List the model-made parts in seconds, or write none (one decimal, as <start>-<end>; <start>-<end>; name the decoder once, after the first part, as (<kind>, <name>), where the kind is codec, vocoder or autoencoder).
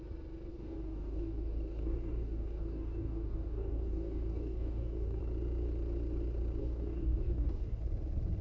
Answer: 0.5-5.2 (codec, DAC); 6.6-7.8